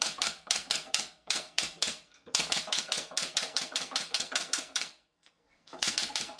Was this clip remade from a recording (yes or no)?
yes